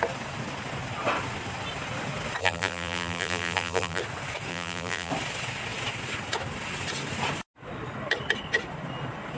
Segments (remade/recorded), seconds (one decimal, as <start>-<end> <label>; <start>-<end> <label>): 0.0-2.4 recorded; 2.4-4.0 remade; 4.0-4.5 recorded; 4.5-5.1 remade; 5.1-9.4 recorded